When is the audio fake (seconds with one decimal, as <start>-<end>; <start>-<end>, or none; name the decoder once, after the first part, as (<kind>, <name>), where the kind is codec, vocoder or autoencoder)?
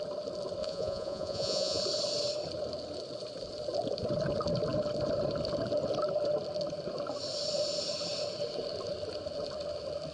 0.6-1.8 (vocoder, Vocos)